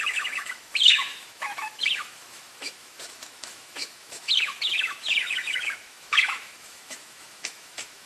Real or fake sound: fake